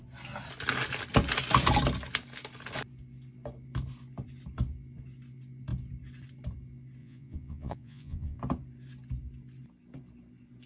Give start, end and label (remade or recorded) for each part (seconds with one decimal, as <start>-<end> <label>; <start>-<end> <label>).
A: 0.0-7.0 recorded; 7.0-8.4 remade; 8.4-10.7 recorded